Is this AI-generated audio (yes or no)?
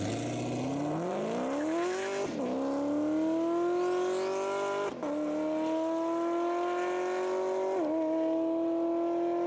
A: no